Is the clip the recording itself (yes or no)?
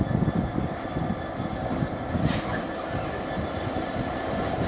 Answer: yes